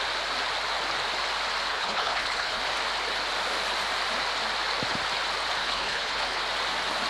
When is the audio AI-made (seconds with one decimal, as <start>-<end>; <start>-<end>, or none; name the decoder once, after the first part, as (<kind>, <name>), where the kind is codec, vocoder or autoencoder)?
1.7-2.6 (codec, HILCodec); 5.6-6.4